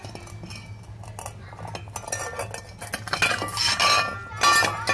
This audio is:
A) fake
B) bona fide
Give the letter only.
B